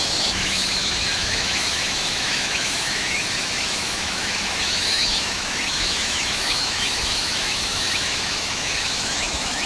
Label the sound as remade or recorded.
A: remade